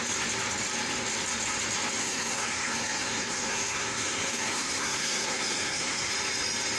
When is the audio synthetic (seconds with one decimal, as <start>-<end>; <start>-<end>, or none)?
2.0-6.1